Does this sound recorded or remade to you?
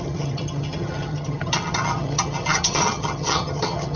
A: remade